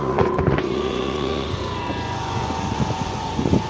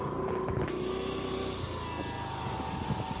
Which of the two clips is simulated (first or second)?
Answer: first